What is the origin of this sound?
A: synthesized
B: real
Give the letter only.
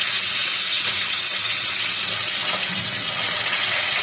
A